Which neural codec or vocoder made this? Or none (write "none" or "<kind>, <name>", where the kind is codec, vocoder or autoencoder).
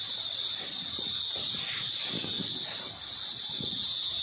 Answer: none